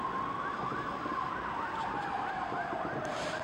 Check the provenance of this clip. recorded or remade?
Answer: recorded